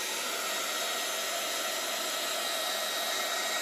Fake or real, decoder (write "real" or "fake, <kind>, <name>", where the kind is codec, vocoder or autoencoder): real